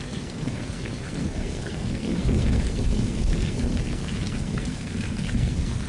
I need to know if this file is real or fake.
fake